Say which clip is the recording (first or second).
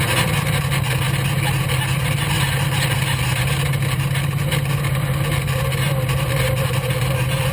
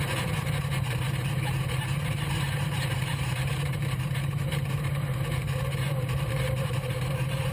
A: first